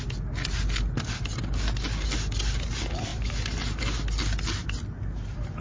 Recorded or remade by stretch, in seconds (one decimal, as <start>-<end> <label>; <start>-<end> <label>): 0.0-5.6 recorded